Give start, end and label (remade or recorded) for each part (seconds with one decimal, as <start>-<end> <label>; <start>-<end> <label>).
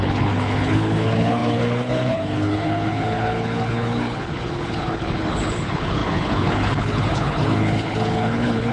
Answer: 0.0-8.7 remade